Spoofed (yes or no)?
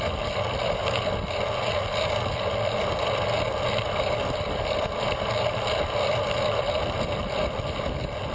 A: no